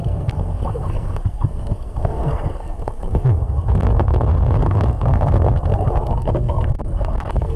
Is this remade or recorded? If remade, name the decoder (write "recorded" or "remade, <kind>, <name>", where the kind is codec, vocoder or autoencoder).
remade, codec, SNAC